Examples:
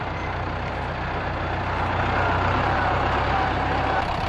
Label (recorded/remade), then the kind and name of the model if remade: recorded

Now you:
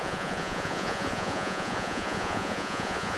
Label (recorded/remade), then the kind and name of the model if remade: remade, vocoder, Vocos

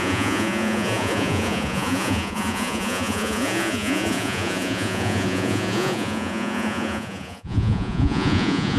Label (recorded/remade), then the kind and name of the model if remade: remade, vocoder, Vocos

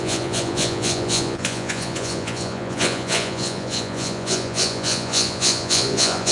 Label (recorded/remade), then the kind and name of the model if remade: remade, vocoder, Vocos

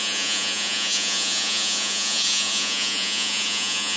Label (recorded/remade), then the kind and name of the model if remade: remade, vocoder, Vocos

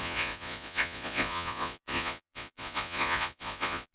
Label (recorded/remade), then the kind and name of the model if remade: remade, vocoder, Vocos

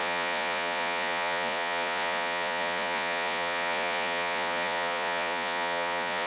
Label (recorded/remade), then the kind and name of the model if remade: remade, vocoder, Vocos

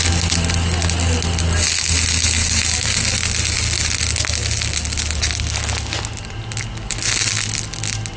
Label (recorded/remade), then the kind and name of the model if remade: recorded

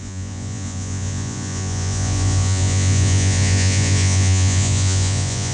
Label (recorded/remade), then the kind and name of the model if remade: remade, vocoder, Vocos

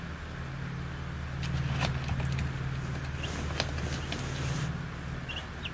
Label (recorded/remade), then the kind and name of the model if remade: recorded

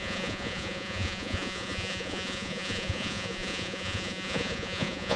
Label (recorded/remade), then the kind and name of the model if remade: remade, vocoder, Vocos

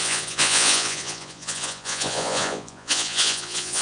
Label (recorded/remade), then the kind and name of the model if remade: remade, vocoder, Vocos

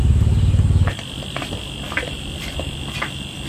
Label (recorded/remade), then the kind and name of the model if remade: recorded